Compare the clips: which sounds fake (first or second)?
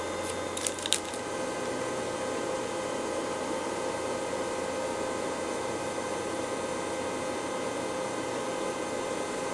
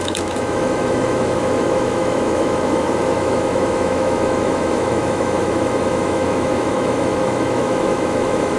second